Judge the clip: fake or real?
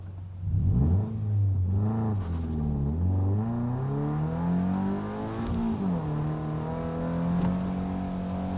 real